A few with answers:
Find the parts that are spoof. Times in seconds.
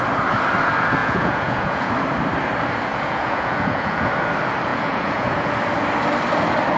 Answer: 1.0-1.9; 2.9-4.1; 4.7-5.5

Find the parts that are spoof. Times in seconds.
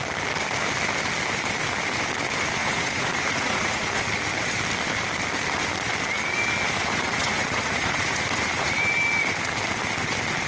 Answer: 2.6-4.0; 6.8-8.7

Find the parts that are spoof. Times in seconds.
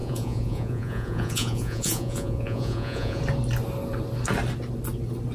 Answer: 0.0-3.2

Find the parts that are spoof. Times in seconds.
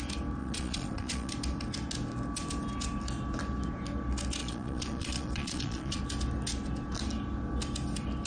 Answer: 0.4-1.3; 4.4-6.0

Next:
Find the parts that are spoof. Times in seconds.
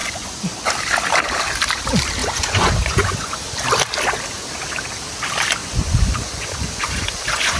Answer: 0.0-0.7; 2.2-3.3; 5.6-7.6